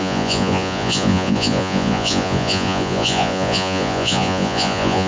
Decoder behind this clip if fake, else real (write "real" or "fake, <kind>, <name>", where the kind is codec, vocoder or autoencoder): fake, vocoder, Vocos